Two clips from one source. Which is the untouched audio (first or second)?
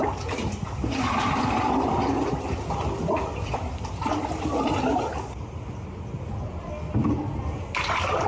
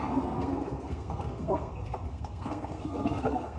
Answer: first